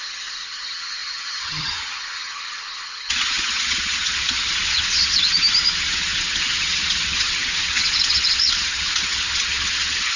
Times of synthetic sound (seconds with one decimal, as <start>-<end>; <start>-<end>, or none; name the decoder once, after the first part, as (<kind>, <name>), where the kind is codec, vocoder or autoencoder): 0.0-10.2 (vocoder, HiFi-GAN)